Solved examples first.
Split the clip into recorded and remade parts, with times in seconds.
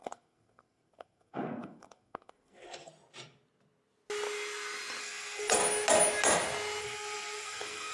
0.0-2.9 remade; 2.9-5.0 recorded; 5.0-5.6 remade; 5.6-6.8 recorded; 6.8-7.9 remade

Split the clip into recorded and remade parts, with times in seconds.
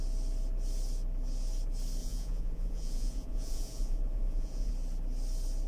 0.0-2.0 recorded; 2.0-4.7 remade; 4.7-5.7 recorded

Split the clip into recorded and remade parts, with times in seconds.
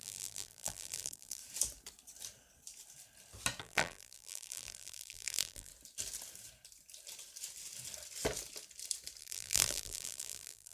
0.0-1.4 remade; 1.4-3.6 recorded; 3.6-5.7 remade; 5.7-9.2 recorded; 9.2-10.7 remade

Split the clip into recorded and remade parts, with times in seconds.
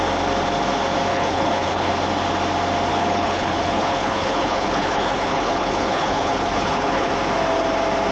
0.0-1.1 recorded; 1.1-1.9 remade; 1.9-2.9 recorded; 2.9-7.1 remade; 7.1-8.1 recorded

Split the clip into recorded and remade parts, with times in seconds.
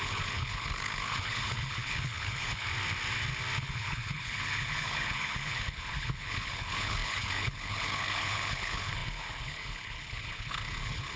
0.0-2.7 remade; 2.7-3.6 recorded; 3.6-11.2 remade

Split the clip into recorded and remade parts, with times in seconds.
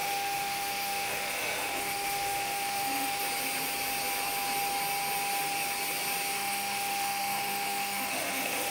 0.0-3.2 remade; 3.2-6.3 recorded; 6.3-8.7 remade